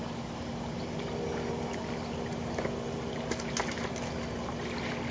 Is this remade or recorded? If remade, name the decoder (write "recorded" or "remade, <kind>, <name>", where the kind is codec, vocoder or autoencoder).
recorded